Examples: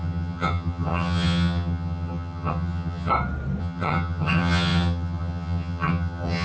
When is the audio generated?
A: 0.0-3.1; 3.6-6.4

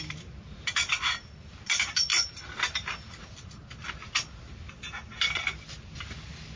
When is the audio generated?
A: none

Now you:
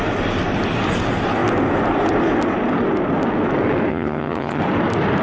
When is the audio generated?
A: 3.9-4.6

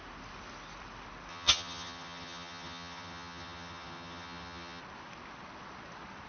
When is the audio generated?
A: 1.3-4.8

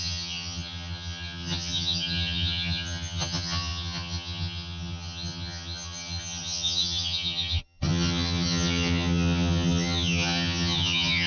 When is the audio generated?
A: 0.0-11.3

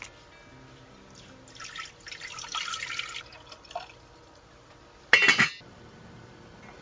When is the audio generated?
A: none